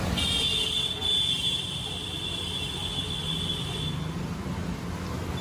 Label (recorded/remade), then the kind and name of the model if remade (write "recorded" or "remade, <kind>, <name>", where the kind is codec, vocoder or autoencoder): recorded